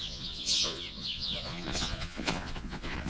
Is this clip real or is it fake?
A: fake